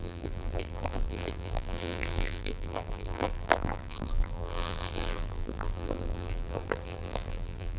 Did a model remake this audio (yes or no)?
yes